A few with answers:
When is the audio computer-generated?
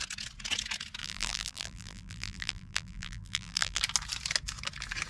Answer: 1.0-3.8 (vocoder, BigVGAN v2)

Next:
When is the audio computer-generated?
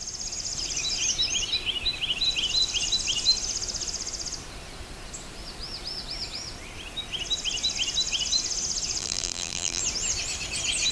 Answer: 9.0-9.8 (vocoder, BigVGAN v2)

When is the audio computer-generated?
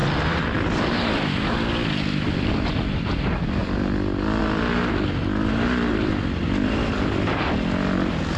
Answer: 0.0-2.7 (vocoder, BigVGAN v2); 3.6-4.4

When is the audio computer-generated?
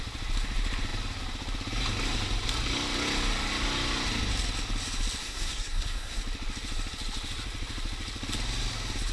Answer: 5.2-6.2 (codec, SNAC)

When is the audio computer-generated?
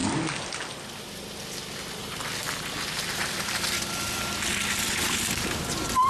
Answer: 2.0-2.4 (vocoder, BigVGAN v2); 5.0-6.1